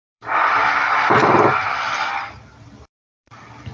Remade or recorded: remade